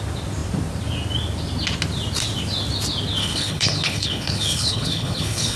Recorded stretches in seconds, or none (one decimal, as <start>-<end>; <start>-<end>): 0.0-3.2